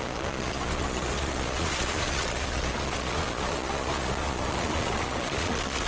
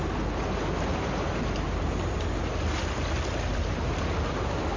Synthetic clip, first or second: first